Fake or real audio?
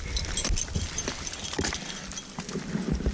real